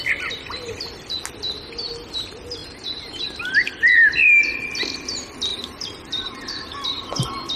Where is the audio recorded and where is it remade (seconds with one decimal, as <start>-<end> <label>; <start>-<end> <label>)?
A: 0.0-2.6 recorded; 2.6-3.7 remade; 3.7-5.5 recorded; 5.5-7.0 remade; 7.0-7.6 recorded